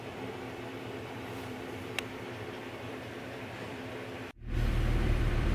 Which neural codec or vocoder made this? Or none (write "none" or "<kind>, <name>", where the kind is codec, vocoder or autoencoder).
vocoder, BigVGAN v2